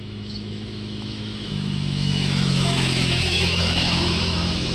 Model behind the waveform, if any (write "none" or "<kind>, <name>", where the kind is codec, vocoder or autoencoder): autoencoder, DAC-VAE